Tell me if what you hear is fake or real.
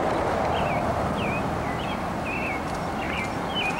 real